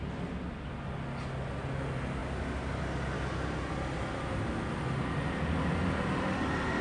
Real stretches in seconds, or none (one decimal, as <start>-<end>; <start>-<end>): 0.0-6.8